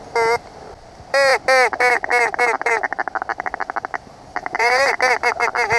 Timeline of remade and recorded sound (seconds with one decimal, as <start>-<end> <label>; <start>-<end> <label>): 0.0-4.4 recorded; 4.4-5.0 remade; 5.0-5.8 recorded